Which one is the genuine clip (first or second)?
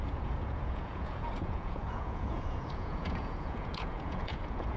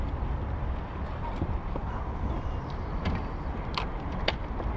second